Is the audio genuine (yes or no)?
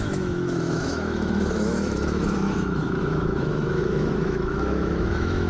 no